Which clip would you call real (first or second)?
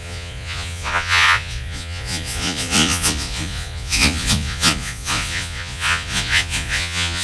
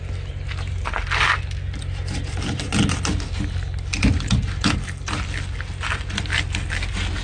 second